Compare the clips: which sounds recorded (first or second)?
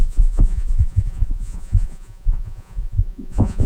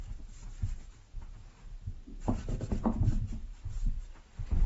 second